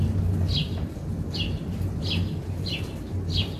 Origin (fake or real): real